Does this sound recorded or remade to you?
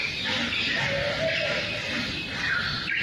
recorded